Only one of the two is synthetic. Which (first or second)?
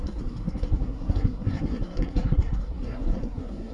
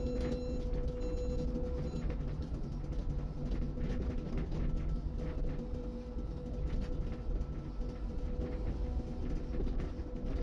first